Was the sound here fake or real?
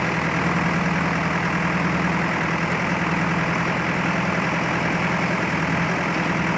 real